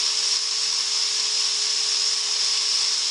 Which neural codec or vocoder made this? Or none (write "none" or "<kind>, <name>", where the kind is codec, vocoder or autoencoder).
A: none